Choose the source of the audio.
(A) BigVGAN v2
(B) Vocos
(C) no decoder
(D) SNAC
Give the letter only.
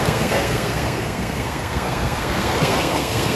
D